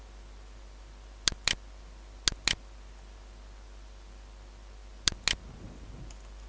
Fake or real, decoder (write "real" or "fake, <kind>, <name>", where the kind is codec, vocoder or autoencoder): real